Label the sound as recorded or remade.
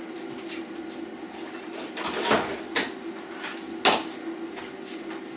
recorded